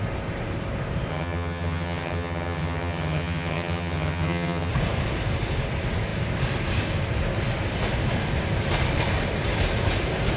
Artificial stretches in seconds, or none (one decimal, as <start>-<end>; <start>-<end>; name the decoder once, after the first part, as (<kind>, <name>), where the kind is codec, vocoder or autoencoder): 1.1-4.7 (vocoder, HiFi-GAN)